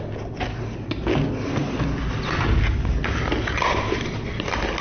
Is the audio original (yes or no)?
yes